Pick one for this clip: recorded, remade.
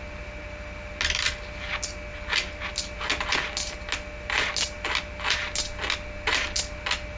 recorded